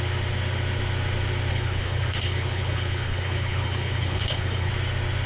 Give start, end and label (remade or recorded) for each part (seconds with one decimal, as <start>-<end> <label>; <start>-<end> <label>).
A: 0.0-1.5 recorded; 1.5-4.7 remade; 4.7-5.3 recorded